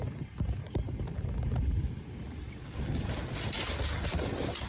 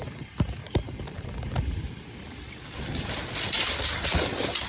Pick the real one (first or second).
first